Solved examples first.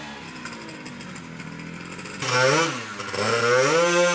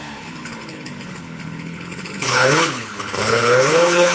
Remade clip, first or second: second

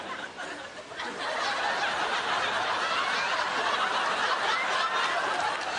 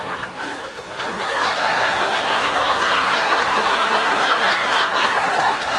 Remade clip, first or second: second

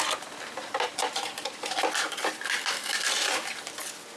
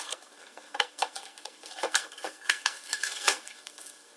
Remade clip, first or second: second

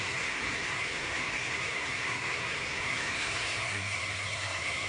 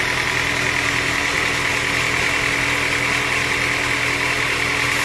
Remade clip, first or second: first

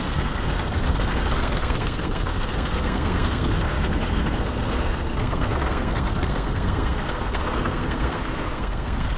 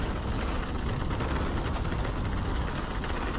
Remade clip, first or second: first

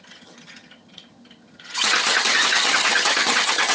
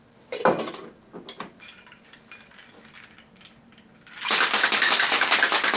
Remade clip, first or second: first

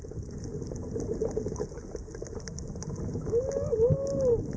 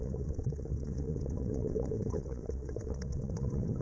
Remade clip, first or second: second